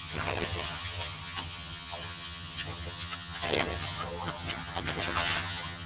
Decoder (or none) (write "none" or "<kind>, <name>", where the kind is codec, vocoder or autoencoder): vocoder, HiFi-GAN